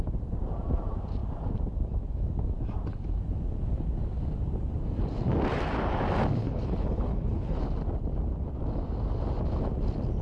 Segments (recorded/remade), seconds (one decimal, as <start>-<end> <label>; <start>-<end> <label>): 0.0-6.4 recorded; 6.4-7.6 remade; 7.6-10.2 recorded